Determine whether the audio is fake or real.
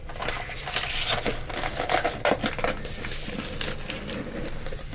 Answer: real